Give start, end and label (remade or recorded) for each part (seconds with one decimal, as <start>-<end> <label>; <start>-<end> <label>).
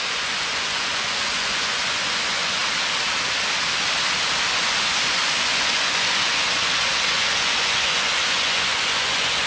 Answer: 0.0-2.6 remade; 2.6-4.6 recorded; 4.6-9.5 remade